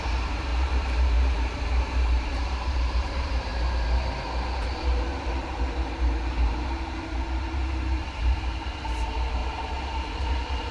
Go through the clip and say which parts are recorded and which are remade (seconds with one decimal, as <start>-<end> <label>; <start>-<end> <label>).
0.0-3.5 remade; 3.5-7.0 recorded; 7.0-10.7 remade